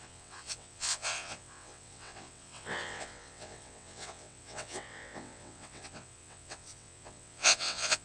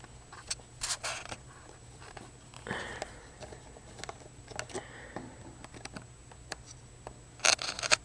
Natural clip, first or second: second